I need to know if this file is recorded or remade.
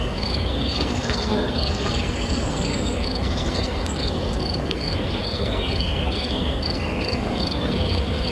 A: remade